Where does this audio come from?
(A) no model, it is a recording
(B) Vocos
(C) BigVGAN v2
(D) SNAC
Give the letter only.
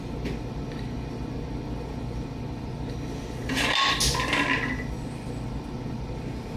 A